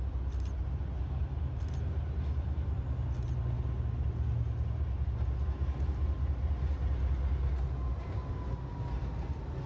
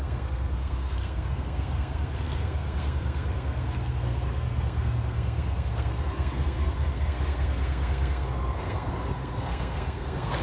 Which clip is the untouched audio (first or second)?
first